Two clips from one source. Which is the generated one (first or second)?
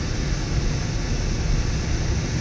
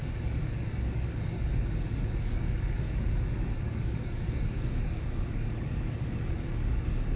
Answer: second